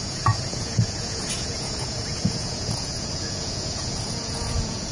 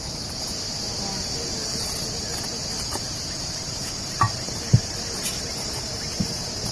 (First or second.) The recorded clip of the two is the second